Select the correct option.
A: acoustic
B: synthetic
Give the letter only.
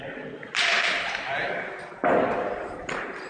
B